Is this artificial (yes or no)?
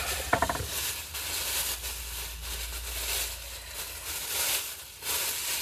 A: no